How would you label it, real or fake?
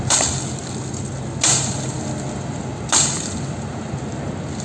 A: real